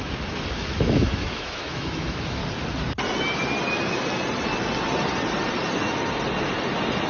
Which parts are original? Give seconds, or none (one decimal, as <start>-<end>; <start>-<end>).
2.4-7.1